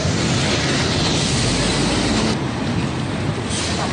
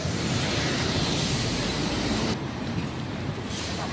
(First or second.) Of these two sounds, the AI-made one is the second